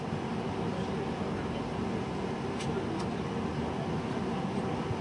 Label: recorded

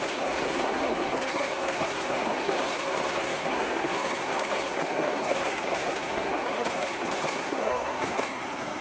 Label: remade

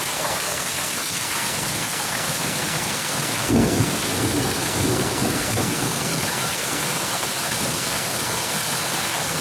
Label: remade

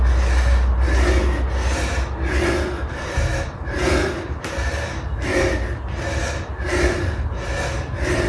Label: recorded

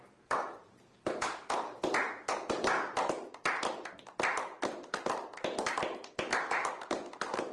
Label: recorded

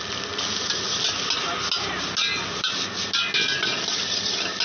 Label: recorded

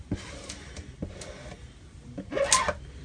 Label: recorded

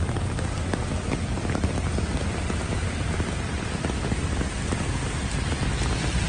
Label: recorded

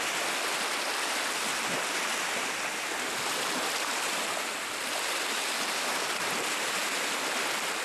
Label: recorded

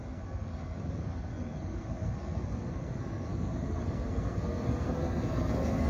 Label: remade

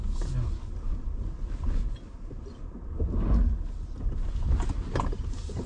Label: recorded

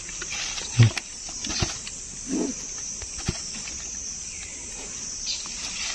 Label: recorded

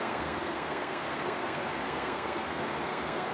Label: remade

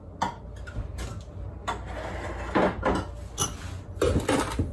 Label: recorded